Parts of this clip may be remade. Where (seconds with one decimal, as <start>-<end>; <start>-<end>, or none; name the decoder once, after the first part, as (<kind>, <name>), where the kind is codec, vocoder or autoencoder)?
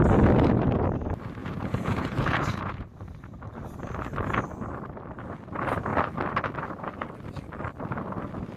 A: 1.4-2.9 (vocoder, Vocos)